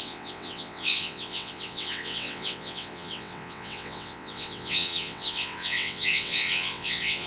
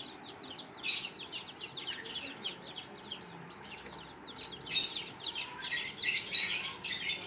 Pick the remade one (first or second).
first